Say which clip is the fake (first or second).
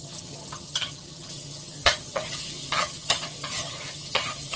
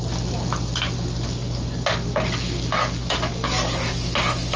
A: first